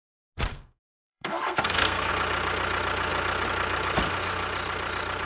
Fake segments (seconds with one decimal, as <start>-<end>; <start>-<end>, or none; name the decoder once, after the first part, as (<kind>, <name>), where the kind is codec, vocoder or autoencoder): 0.5-2.1 (codec, SNAC)